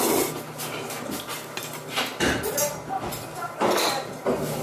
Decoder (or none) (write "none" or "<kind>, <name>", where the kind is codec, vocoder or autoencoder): none